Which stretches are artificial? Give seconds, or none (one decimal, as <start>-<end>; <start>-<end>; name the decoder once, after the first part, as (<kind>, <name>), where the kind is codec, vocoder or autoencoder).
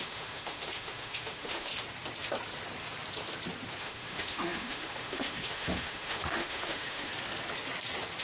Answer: 0.0-1.7 (autoencoder, DAC-VAE); 3.8-7.1